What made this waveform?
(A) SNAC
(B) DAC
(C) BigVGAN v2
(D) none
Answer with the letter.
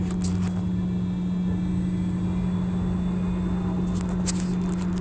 D